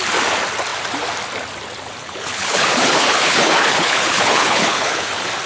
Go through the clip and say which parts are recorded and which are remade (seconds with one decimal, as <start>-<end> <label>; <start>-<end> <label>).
0.0-2.0 recorded; 2.0-5.1 remade; 5.1-5.5 recorded